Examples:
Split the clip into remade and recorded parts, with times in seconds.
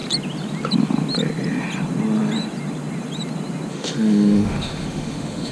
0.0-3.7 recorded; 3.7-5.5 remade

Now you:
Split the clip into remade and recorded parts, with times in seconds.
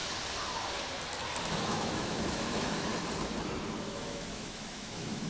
0.0-1.4 recorded; 1.4-2.9 remade; 2.9-3.8 recorded; 3.8-5.3 remade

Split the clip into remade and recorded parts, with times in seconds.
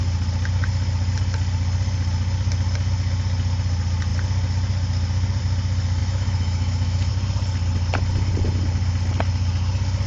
0.0-6.0 recorded; 6.0-7.1 remade; 7.1-10.1 recorded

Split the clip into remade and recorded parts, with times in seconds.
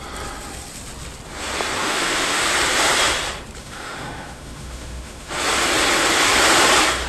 0.0-1.8 recorded; 1.8-2.4 remade; 2.4-3.6 recorded; 3.6-5.3 remade; 5.3-7.1 recorded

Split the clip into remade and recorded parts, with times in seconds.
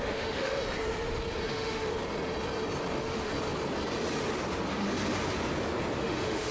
0.0-0.6 remade; 0.6-1.5 recorded; 1.5-1.9 remade; 1.9-2.9 recorded; 2.9-3.3 remade; 3.3-6.0 recorded; 6.0-6.5 remade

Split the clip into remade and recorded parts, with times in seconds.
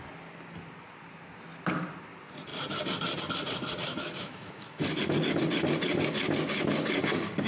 0.0-3.9 recorded; 3.9-4.8 remade; 4.8-7.5 recorded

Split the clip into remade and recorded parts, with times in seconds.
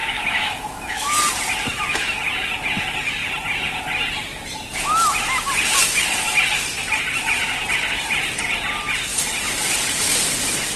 0.0-1.2 remade; 1.2-1.7 recorded; 1.7-2.2 remade; 2.2-10.8 recorded